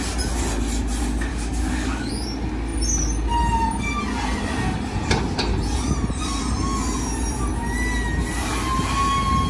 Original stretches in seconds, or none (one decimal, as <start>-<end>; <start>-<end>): 0.0-1.3; 2.1-9.5

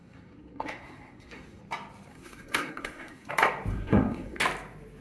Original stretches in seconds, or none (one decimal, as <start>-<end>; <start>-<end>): 1.6-2.1; 3.3-3.7; 4.4-5.0

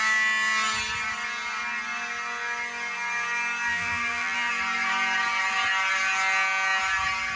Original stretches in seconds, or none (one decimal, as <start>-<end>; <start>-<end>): 0.0-3.7; 4.5-7.4